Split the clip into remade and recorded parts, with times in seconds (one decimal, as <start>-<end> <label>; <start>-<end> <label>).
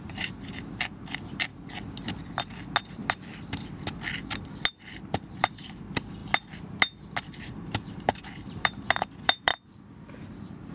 0.0-1.5 remade; 1.5-5.4 recorded; 5.4-6.2 remade; 6.2-7.2 recorded; 7.2-9.5 remade; 9.5-10.7 recorded